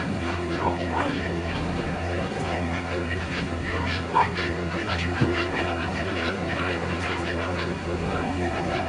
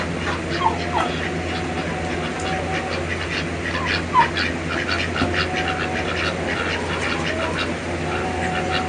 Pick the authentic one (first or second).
second